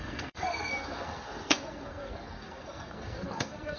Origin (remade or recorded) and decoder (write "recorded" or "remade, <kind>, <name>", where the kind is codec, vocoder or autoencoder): remade, codec, SNAC